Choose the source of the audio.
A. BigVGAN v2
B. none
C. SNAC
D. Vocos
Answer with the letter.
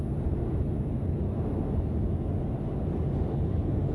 B